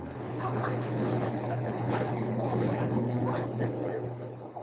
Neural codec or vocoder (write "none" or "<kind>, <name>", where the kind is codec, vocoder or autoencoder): codec, HILCodec